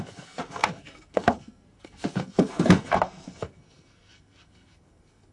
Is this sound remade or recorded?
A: remade